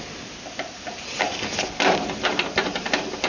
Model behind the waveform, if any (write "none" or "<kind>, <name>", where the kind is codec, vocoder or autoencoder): none